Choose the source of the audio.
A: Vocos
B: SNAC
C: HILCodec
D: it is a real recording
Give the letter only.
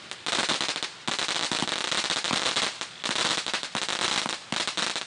D